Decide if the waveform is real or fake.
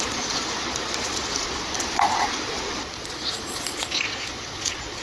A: fake